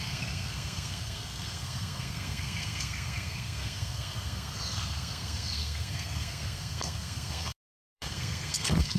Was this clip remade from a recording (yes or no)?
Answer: yes